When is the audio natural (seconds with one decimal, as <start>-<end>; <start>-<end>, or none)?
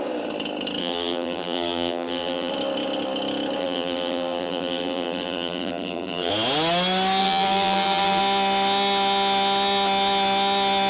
0.0-0.8; 2.5-3.6; 6.3-7.2; 8.2-10.9